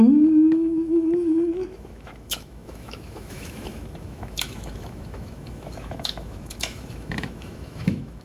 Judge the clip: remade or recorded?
remade